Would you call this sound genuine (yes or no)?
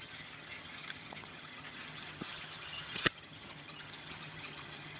no